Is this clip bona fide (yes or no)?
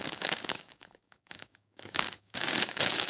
no